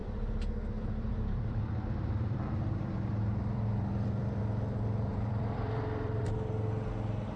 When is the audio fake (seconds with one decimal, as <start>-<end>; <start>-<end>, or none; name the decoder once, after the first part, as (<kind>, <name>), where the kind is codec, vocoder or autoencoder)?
0.0-4.4 (vocoder, BigVGAN v2); 5.1-6.3